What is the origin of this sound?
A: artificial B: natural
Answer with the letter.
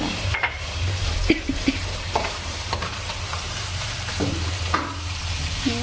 A